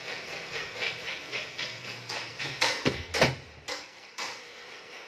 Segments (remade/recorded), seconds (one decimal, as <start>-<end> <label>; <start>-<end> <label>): 0.0-3.1 remade; 3.1-3.7 recorded; 3.7-5.1 remade